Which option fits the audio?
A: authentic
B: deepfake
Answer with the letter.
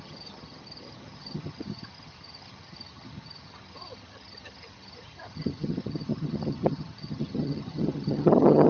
B